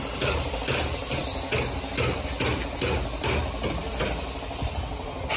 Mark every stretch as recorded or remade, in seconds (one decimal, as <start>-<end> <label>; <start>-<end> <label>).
0.0-5.4 recorded